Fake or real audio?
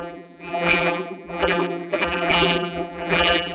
fake